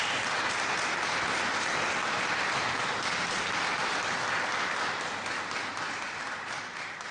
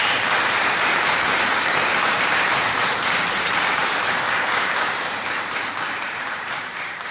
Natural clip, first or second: first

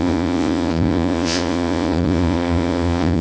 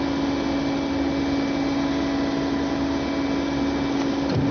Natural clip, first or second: second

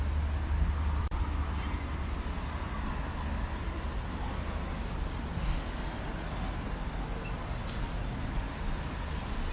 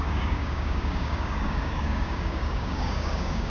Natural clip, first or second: first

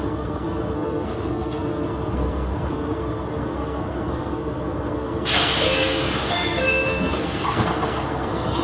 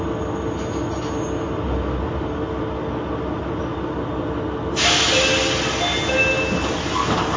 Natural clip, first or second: second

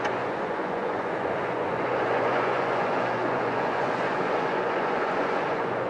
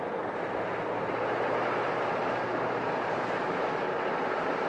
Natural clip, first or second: second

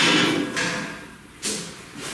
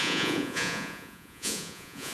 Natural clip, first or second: first